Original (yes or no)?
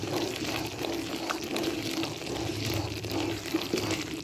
no